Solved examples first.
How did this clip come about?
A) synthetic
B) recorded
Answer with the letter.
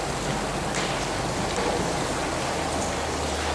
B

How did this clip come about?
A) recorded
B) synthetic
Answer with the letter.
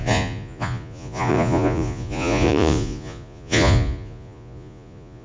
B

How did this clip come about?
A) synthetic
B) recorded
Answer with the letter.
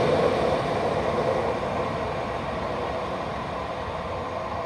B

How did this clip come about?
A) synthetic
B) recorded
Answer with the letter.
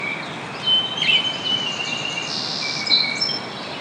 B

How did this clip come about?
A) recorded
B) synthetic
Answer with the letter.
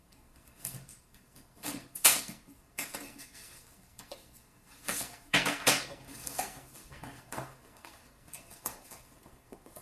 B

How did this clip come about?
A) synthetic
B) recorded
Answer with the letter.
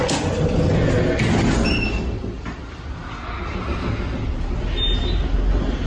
B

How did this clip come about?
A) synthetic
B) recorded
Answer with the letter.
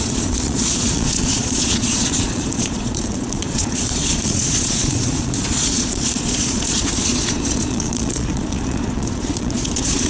A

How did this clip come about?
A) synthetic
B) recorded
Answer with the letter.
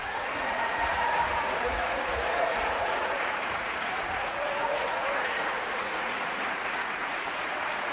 A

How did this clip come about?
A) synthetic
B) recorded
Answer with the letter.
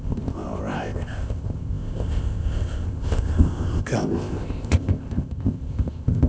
A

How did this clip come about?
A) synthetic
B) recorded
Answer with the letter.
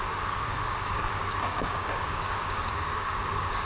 A